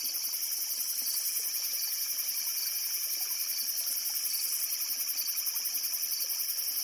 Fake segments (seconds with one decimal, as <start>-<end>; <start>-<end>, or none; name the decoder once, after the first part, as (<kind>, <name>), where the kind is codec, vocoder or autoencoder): 1.3-2.1 (vocoder, Vocos); 2.5-3.1